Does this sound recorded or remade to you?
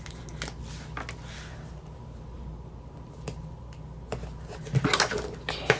recorded